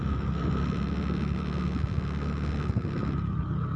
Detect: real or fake real